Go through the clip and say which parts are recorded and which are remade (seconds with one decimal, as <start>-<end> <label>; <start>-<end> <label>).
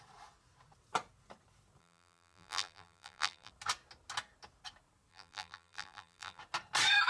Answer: 0.0-1.8 recorded; 1.8-3.5 remade; 3.5-5.1 recorded; 5.1-6.4 remade; 6.4-7.1 recorded